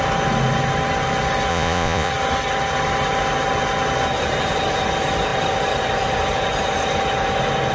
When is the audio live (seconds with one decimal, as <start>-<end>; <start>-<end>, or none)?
0.0-1.5; 2.1-7.7